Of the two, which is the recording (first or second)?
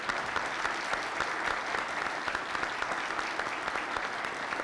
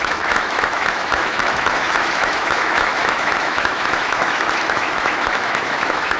first